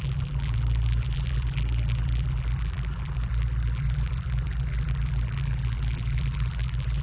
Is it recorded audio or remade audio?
remade